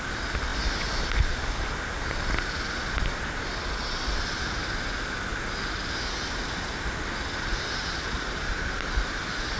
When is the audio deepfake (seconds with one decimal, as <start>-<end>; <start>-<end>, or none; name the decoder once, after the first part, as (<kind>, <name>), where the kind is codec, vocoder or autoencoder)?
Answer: none